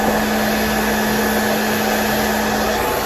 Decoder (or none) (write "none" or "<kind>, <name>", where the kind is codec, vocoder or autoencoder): none